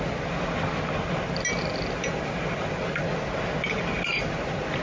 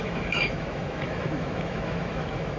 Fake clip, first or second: second